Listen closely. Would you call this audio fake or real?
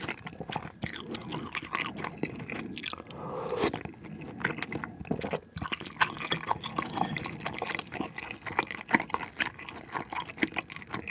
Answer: real